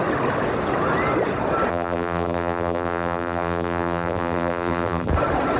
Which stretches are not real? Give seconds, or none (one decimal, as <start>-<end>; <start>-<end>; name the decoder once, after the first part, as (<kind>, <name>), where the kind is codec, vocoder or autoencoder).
1.7-5.1 (vocoder, BigVGAN v2)